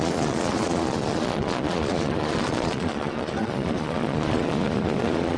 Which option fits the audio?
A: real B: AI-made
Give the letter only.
B